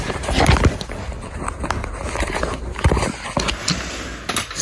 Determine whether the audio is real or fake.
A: real